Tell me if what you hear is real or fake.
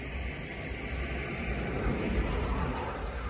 real